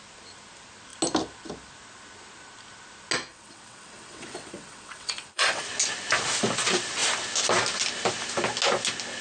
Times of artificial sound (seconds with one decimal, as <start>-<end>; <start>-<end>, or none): 3.3-5.6